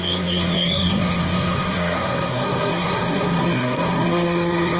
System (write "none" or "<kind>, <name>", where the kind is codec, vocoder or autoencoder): codec, SNAC